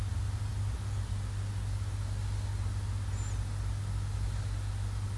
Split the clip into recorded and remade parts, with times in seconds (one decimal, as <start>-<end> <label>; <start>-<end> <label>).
0.0-5.2 recorded